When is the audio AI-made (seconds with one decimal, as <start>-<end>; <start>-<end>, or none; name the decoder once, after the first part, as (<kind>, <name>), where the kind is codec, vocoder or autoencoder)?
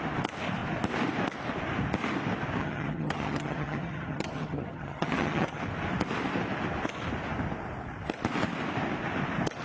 2.6-5.6 (vocoder, HiFi-GAN)